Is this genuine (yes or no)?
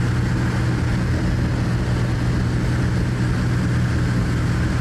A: yes